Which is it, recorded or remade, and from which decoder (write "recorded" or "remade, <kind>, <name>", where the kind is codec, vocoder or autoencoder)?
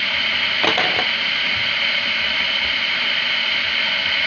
recorded